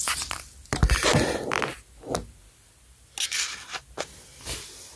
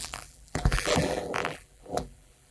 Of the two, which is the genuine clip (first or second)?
first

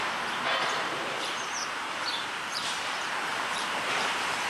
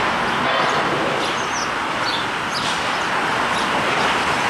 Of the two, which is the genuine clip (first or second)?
second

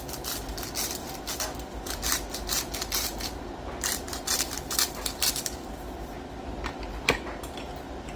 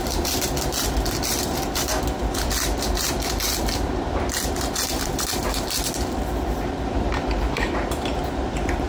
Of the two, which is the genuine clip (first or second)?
first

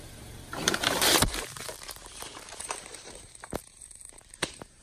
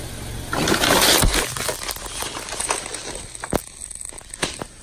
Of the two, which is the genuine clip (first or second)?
second